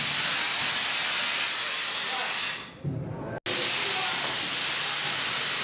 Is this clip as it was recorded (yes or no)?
yes